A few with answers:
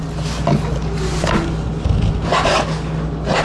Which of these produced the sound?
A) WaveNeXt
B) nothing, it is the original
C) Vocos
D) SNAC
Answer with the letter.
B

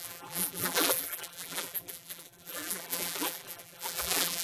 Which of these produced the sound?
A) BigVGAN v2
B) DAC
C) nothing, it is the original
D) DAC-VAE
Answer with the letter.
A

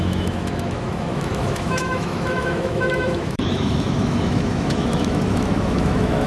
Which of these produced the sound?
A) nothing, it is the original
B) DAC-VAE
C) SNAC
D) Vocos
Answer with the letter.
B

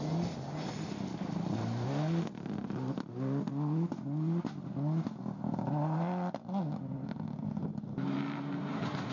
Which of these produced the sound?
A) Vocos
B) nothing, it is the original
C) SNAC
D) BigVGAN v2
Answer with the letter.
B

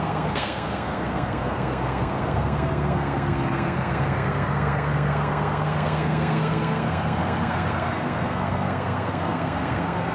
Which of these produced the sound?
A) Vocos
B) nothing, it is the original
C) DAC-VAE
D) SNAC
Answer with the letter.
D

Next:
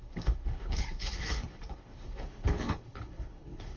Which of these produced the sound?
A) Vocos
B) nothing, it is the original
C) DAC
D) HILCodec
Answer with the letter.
D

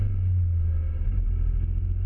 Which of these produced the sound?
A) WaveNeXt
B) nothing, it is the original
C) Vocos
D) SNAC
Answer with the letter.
B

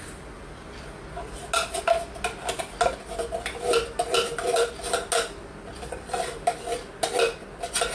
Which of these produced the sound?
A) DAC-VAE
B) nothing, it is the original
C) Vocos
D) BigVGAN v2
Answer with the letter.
B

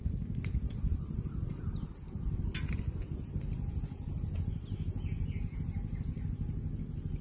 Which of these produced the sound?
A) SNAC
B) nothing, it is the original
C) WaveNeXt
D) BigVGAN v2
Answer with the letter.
B